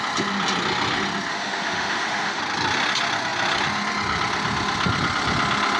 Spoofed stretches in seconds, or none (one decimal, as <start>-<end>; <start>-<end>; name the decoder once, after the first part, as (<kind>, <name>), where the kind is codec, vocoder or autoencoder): 1.3-2.4 (autoencoder, DAC-VAE)